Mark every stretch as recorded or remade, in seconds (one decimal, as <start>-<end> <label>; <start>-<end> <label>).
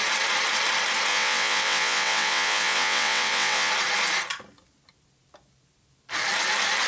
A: 0.0-1.1 recorded; 1.1-3.7 remade; 3.7-6.9 recorded